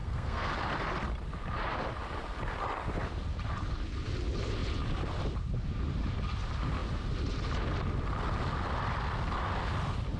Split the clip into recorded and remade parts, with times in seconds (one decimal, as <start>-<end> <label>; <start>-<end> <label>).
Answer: 0.0-0.5 remade; 0.5-10.2 recorded